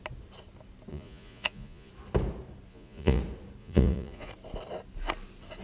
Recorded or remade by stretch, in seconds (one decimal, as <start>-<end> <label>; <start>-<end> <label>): 0.0-0.9 recorded; 0.9-1.9 remade; 1.9-2.7 recorded; 2.7-3.2 remade; 3.2-3.6 recorded; 3.6-4.3 remade; 4.3-5.6 recorded